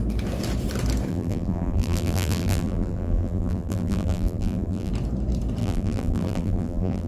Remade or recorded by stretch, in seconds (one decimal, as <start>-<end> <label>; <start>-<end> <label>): 0.0-1.1 recorded; 1.1-4.9 remade; 4.9-5.6 recorded; 5.6-7.1 remade